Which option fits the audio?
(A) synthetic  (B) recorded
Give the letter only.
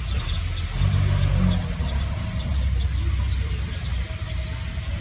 B